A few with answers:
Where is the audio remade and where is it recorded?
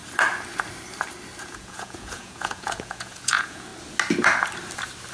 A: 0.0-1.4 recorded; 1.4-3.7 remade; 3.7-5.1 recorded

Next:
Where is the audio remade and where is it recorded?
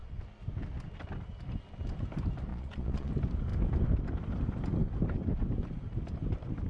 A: 0.0-2.5 recorded; 2.5-3.1 remade; 3.1-6.7 recorded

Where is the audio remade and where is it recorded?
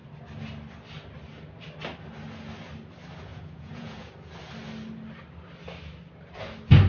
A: 0.0-3.3 recorded; 3.3-4.1 remade; 4.1-6.9 recorded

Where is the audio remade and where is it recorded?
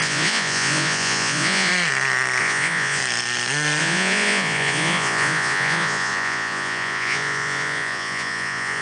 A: 0.0-1.7 remade; 1.7-2.4 recorded; 2.4-3.0 remade; 3.0-3.8 recorded; 3.8-8.8 remade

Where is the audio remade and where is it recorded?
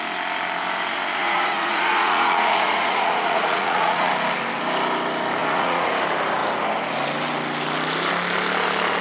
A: 0.0-1.2 recorded; 1.2-4.1 remade; 4.1-5.4 recorded; 5.4-5.9 remade; 5.9-9.0 recorded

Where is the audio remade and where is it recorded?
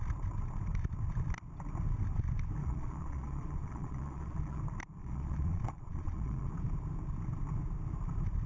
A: 0.0-2.6 recorded; 2.6-4.6 remade; 4.6-5.0 recorded; 5.0-6.5 remade; 6.5-8.5 recorded